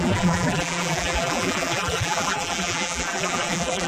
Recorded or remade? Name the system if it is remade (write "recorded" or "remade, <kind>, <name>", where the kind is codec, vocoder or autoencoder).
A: remade, vocoder, BigVGAN v2